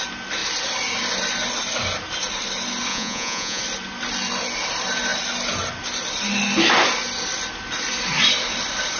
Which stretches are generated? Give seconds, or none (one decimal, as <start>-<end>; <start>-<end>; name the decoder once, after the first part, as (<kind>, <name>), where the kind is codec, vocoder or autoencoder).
2.9-3.6 (vocoder, Vocos)